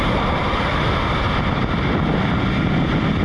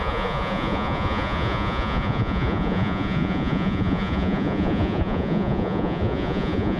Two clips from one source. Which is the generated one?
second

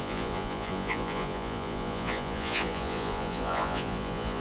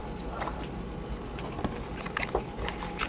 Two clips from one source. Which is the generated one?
first